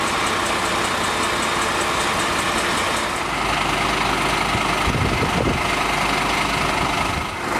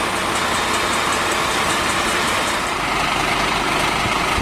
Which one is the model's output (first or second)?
second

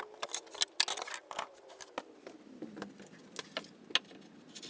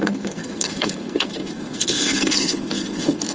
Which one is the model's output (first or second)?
second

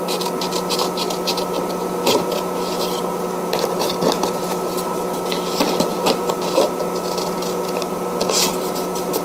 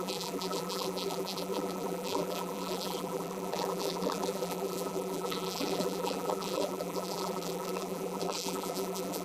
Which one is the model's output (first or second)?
second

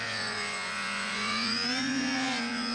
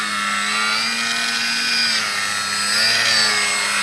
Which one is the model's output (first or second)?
first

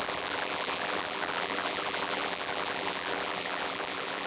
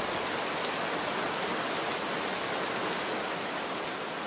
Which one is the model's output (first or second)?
first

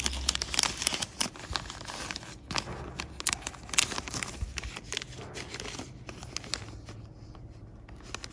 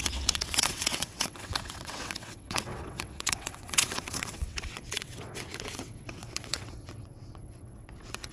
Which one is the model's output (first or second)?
second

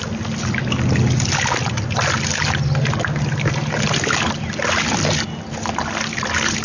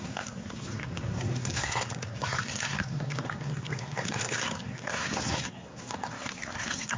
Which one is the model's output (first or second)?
second